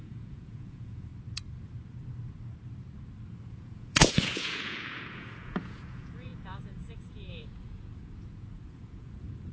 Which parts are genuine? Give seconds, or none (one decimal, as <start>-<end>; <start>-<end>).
1.1-3.4